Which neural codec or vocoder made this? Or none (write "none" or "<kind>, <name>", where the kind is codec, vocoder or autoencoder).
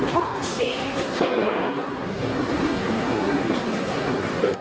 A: codec, SNAC